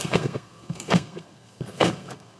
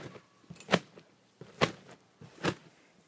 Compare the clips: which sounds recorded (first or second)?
second